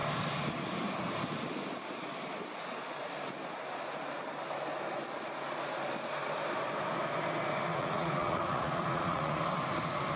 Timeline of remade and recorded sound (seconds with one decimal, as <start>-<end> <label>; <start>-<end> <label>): 0.0-7.7 recorded; 7.7-9.4 remade; 9.4-10.2 recorded

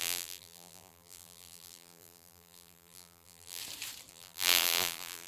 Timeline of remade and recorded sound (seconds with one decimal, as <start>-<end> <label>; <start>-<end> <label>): 0.0-3.6 remade; 3.6-4.1 recorded; 4.1-5.3 remade

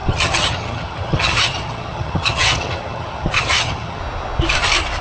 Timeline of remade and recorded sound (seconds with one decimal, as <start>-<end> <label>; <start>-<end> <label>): 0.0-4.0 remade; 4.0-5.0 recorded

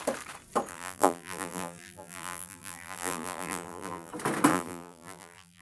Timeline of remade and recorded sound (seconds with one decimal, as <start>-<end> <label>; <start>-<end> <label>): 0.0-0.7 recorded; 0.7-4.1 remade; 4.1-4.5 recorded; 4.5-5.6 remade

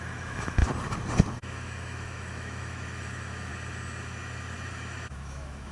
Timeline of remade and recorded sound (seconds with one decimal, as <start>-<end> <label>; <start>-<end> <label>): 0.0-0.6 remade; 0.6-1.3 recorded; 1.3-3.5 remade; 3.5-4.7 recorded; 4.7-5.7 remade

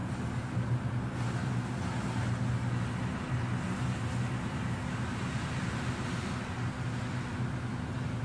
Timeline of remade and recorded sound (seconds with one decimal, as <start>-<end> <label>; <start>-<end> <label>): 0.0-8.2 recorded

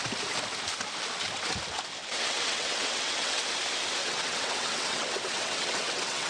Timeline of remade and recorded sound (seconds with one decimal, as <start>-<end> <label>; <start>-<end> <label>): 0.0-2.0 recorded; 2.0-3.4 remade; 3.4-4.0 recorded; 4.0-6.3 remade